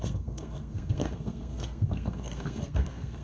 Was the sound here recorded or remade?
remade